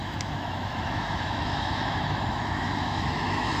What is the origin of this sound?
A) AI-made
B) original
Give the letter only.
A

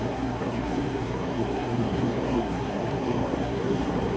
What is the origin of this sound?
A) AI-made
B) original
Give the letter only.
A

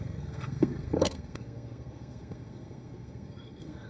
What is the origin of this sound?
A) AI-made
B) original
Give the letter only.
A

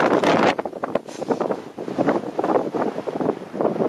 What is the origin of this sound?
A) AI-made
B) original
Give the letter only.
B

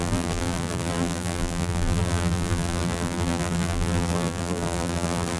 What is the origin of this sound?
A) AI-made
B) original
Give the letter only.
A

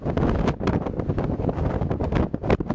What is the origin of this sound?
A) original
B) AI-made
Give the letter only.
A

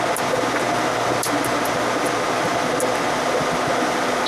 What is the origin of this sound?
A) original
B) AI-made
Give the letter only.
A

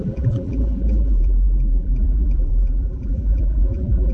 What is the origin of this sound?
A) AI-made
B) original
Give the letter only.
A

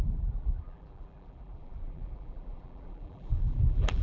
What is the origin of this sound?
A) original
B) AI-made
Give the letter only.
B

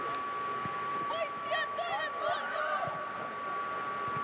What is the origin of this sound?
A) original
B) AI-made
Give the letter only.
A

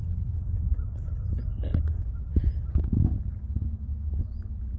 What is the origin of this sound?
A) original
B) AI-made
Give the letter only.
A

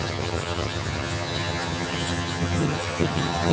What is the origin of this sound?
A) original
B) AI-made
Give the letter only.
B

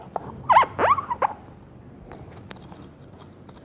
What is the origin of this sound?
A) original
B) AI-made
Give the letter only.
A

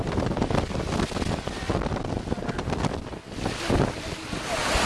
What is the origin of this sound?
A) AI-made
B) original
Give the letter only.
B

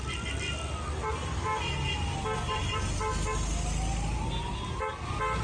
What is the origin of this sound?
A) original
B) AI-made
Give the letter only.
A